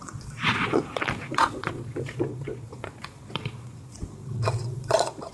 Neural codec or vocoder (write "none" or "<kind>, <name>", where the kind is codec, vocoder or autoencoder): vocoder, Vocos